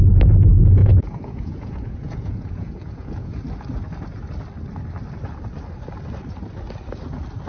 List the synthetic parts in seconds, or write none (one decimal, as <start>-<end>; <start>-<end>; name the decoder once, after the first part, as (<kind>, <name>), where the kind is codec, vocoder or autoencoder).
0.8-3.4 (vocoder, Vocos)